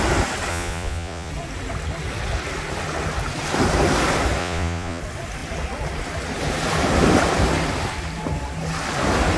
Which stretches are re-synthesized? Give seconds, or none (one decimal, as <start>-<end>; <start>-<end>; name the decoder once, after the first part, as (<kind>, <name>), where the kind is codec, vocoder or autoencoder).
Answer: 0.5-1.3 (vocoder, Vocos); 4.4-5.0